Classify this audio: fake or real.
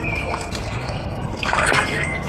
fake